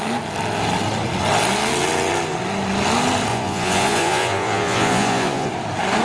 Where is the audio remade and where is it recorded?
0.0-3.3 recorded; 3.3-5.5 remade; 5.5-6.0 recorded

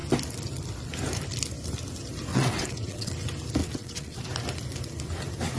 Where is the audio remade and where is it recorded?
0.0-2.3 recorded; 2.3-3.1 remade; 3.1-3.6 recorded; 3.6-4.2 remade; 4.2-5.6 recorded